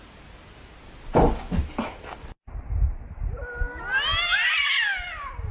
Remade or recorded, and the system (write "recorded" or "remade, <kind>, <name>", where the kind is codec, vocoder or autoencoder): recorded